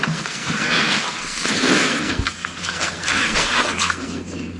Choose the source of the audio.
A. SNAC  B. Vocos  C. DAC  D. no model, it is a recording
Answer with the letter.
A